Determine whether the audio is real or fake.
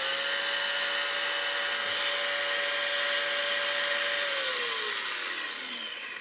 real